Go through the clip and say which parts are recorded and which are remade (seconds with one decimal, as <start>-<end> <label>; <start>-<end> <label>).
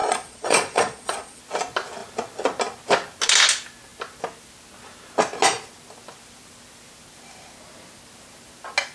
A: 0.0-1.4 remade; 1.4-8.9 recorded